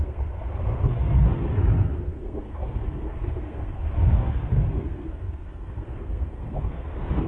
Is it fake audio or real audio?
fake